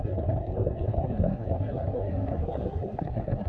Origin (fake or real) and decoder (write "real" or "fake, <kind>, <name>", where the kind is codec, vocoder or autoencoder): fake, codec, SNAC